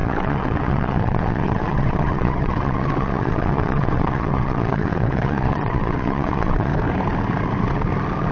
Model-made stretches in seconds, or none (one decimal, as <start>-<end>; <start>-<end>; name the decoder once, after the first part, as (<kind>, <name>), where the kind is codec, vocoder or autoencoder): 0.0-6.7 (vocoder, WaveNeXt)